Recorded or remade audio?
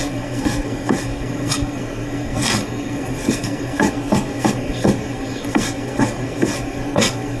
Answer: remade